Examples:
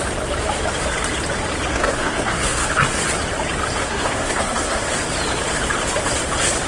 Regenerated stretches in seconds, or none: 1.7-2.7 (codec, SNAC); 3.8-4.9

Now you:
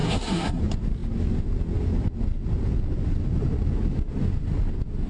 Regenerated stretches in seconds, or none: 0.0-0.6 (codec, SNAC)

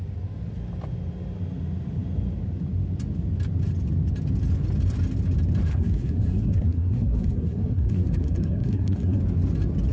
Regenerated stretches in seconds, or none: 5.7-9.2 (codec, SNAC)

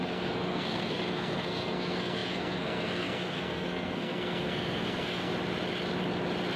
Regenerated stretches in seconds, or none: 0.0-5.3 (codec, SNAC)

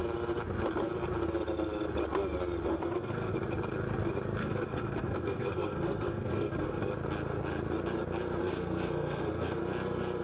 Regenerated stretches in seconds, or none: 2.7-3.3 (codec, SNAC); 4.4-6.8; 8.4-9.6